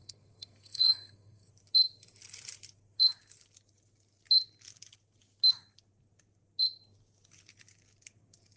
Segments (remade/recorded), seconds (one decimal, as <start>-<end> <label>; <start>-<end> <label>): 0.0-1.5 remade; 1.5-8.6 recorded